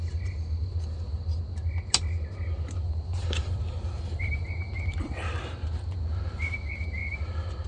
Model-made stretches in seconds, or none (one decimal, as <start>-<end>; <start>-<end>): none